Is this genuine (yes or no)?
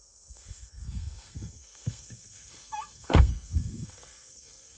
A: no